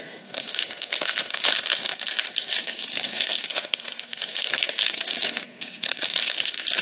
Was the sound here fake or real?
fake